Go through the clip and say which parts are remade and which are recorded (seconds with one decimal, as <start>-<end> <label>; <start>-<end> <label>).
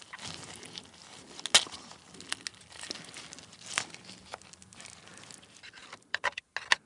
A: 0.0-5.8 recorded; 5.8-6.4 remade; 6.4-6.9 recorded